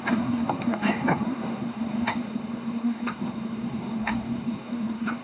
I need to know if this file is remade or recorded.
remade